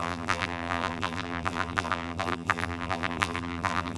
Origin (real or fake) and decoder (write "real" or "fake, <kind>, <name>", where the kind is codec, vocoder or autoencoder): fake, vocoder, BigVGAN v2